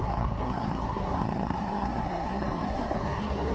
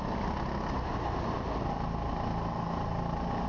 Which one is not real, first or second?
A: first